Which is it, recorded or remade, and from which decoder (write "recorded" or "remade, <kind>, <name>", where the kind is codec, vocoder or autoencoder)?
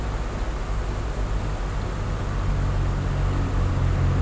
recorded